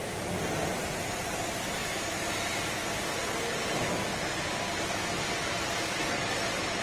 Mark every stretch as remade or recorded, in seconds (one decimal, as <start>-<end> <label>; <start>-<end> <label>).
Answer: 0.0-1.4 remade; 1.4-6.8 recorded